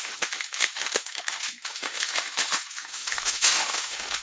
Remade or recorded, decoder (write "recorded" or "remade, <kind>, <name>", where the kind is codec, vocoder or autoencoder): remade, autoencoder, DAC-VAE